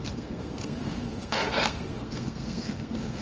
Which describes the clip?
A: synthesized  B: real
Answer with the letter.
A